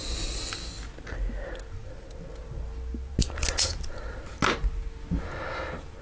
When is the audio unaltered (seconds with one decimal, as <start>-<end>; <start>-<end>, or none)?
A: 0.0-6.0